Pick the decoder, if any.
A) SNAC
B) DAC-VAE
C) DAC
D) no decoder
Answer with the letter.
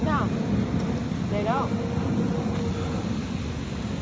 D